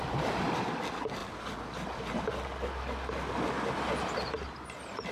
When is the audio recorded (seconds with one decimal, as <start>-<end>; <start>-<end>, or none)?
0.0-5.1